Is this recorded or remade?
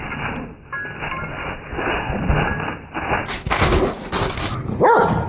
recorded